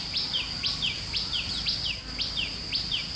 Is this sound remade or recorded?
recorded